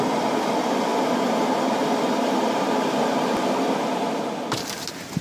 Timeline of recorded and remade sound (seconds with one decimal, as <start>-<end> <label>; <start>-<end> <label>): 0.0-5.2 recorded